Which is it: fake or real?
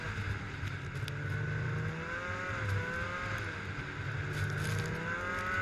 real